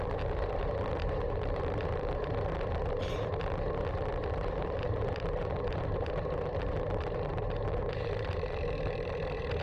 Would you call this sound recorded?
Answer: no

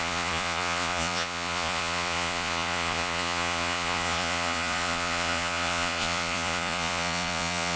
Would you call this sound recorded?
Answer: no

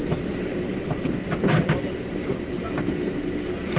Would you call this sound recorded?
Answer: yes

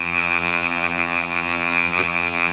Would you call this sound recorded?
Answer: no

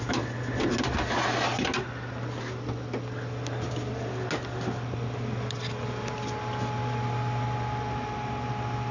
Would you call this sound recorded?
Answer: yes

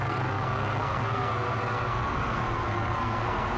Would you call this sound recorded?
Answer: no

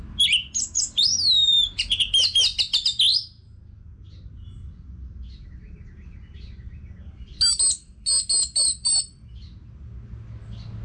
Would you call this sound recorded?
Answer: yes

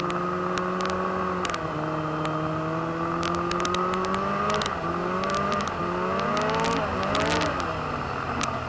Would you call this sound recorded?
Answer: yes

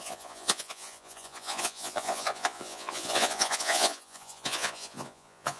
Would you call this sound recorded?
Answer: no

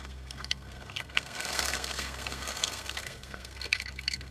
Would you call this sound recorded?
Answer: no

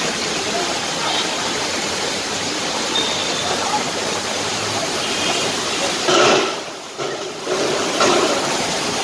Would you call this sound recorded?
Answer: no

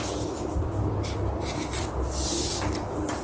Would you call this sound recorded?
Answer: yes